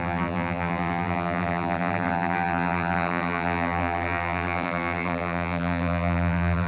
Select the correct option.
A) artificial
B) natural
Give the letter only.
A